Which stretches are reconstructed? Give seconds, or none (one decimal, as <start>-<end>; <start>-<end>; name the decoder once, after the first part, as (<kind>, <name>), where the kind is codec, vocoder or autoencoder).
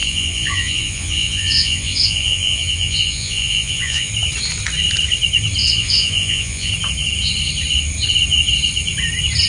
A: 0.0-4.1 (vocoder, Vocos); 5.6-6.7